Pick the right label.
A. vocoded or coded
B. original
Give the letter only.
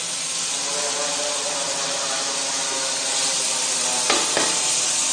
B